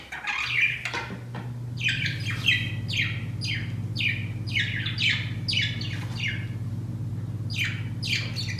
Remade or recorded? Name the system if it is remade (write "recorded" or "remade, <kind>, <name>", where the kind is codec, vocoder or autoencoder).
recorded